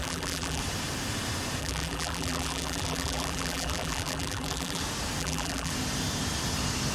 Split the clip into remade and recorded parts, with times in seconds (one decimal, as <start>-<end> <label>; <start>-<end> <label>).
0.0-0.6 remade; 0.6-1.6 recorded; 1.6-4.8 remade; 4.8-5.2 recorded; 5.2-5.7 remade; 5.7-6.9 recorded